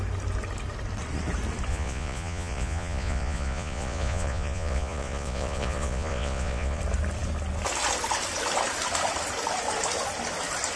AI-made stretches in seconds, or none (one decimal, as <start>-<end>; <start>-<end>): 1.7-6.8